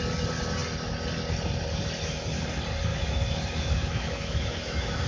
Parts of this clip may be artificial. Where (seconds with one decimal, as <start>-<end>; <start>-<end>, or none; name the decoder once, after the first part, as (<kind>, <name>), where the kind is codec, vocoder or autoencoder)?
2.9-5.1 (autoencoder, DAC-VAE)